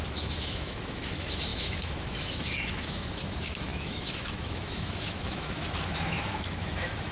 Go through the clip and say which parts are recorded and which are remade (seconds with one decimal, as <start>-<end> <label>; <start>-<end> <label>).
0.0-7.1 remade